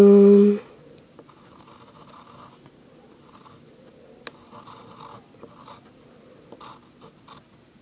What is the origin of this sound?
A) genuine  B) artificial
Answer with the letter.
A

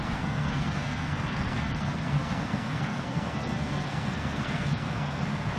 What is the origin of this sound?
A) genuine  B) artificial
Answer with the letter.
B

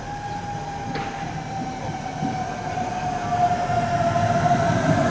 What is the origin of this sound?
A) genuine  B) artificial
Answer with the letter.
A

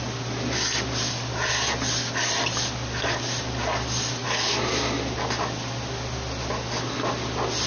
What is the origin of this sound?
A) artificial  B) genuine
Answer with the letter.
B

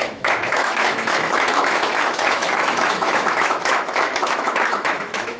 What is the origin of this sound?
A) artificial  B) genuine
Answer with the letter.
A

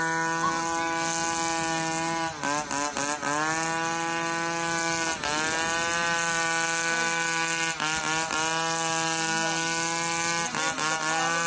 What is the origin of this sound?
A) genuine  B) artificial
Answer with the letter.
A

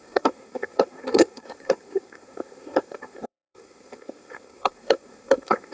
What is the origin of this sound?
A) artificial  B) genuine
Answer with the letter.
A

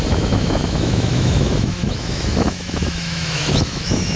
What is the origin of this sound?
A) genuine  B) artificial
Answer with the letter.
B